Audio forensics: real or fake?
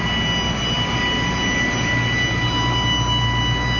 real